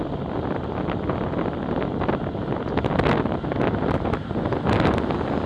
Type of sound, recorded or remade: recorded